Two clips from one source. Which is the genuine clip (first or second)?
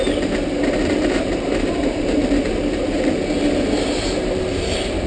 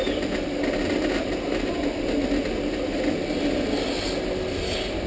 second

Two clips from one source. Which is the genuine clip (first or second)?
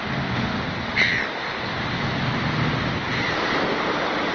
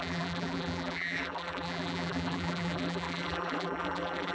first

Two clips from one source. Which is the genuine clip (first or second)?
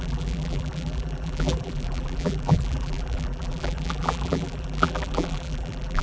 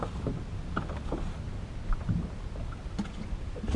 second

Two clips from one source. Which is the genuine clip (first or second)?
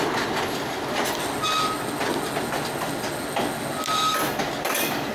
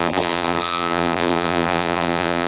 first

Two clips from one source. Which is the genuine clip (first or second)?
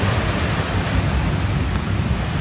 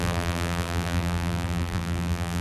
first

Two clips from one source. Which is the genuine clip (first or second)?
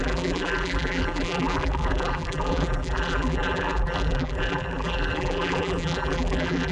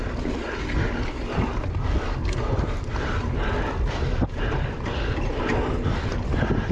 second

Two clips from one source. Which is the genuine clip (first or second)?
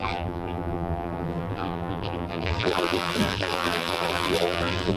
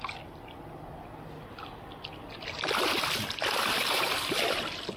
second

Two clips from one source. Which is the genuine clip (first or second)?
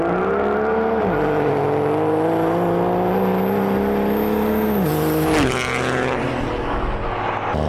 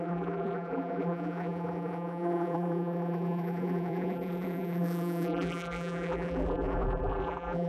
first